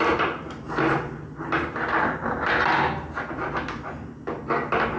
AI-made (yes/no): no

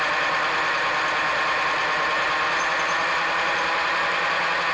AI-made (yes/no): no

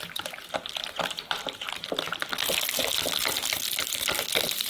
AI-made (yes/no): no